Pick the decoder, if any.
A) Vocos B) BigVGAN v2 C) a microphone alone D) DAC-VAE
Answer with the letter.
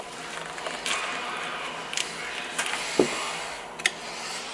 C